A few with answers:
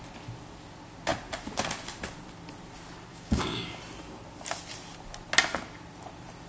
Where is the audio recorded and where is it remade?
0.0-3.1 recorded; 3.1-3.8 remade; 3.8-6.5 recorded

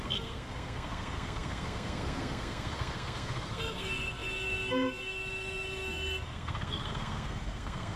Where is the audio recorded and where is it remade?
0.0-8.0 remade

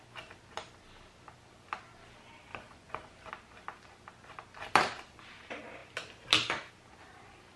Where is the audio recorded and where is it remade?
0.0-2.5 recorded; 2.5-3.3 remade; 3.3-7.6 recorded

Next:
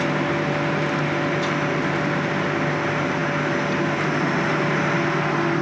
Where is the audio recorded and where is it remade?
0.0-5.6 recorded

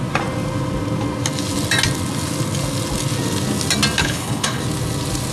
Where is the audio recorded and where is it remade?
0.0-4.0 recorded; 4.0-4.6 remade; 4.6-5.3 recorded